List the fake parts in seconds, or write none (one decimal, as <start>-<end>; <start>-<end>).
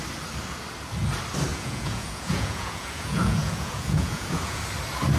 1.5-4.6